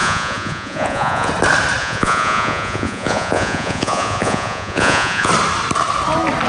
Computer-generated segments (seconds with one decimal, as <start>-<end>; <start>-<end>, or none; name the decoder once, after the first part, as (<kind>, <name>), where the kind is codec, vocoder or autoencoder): 0.0-1.3 (vocoder, Vocos); 1.8-5.3